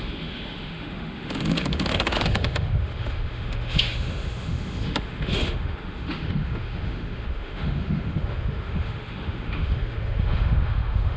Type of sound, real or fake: fake